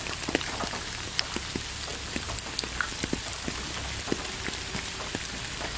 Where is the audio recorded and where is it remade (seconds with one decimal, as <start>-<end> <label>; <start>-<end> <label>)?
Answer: 0.0-5.8 recorded